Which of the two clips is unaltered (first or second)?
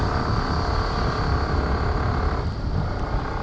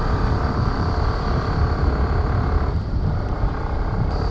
first